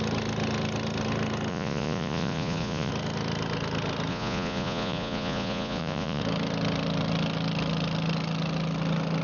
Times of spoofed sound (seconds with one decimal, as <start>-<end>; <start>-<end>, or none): 1.5-2.9; 4.1-6.2